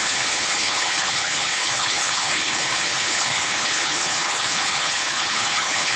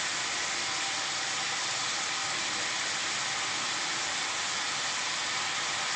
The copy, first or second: first